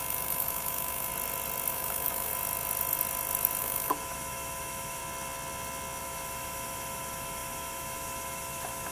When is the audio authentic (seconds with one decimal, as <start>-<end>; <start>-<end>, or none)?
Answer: 1.1-1.7; 2.3-3.6; 5.0-6.0